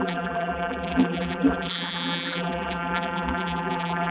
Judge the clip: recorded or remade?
remade